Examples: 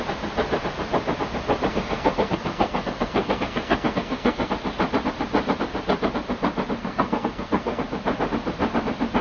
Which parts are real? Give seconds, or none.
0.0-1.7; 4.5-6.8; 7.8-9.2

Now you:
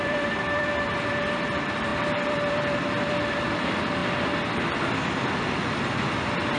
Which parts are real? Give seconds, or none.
4.0-5.7

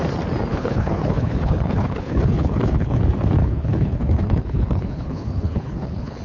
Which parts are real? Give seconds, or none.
0.0-0.5; 3.0-3.4

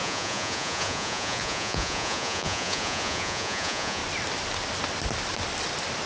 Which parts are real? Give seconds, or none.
4.0-6.1

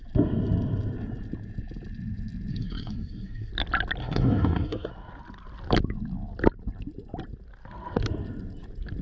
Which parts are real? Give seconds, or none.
0.0-2.5; 3.5-4.0; 4.9-9.0

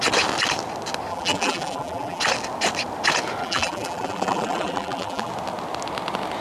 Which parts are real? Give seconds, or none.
0.0-1.1; 2.2-3.4; 5.3-6.4

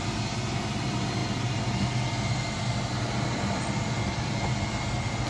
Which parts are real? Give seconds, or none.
0.0-5.3